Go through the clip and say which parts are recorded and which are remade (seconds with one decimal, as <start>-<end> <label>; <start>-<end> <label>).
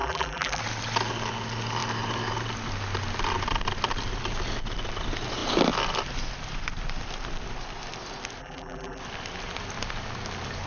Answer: 0.0-0.6 remade; 0.6-8.4 recorded; 8.4-9.0 remade; 9.0-10.7 recorded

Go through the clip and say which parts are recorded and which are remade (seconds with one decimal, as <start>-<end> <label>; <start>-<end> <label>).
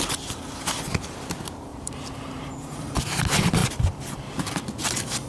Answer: 0.0-1.7 recorded; 1.7-3.0 remade; 3.0-5.3 recorded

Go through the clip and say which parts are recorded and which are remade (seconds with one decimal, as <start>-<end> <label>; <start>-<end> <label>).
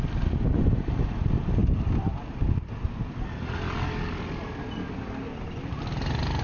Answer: 0.0-1.6 recorded; 1.6-2.5 remade; 2.5-5.3 recorded; 5.3-5.8 remade; 5.8-6.4 recorded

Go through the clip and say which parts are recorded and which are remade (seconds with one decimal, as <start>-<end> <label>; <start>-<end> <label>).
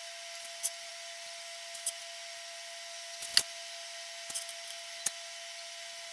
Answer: 0.0-6.1 recorded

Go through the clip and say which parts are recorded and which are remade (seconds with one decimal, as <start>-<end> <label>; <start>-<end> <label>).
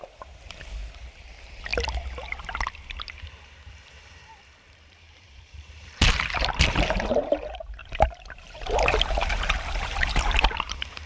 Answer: 0.0-1.7 remade; 1.7-3.2 recorded; 3.2-11.1 remade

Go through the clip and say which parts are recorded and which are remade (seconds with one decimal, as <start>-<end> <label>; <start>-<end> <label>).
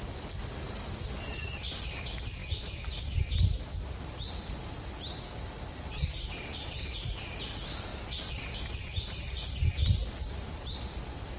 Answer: 0.0-11.4 recorded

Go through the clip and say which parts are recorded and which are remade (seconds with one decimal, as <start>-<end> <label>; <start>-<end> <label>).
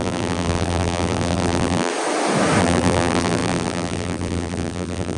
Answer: 0.0-1.9 remade; 1.9-2.6 recorded; 2.6-5.2 remade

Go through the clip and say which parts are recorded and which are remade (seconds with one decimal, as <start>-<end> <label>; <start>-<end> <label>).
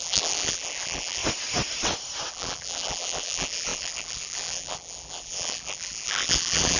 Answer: 0.0-1.2 remade; 1.2-2.3 recorded; 2.3-6.8 remade